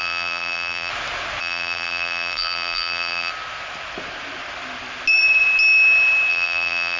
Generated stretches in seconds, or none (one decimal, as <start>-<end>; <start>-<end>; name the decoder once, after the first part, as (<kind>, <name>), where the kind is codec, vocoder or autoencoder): 0.0-0.9 (vocoder, BigVGAN v2); 1.4-3.3; 6.3-7.0